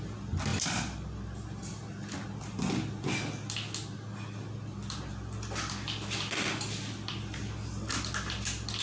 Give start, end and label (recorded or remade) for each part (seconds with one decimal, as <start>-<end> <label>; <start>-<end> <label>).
0.0-8.8 recorded